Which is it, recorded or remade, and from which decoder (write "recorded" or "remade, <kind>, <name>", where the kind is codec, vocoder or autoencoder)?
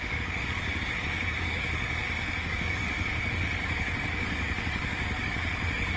remade, codec, DAC